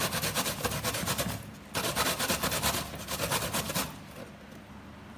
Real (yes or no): yes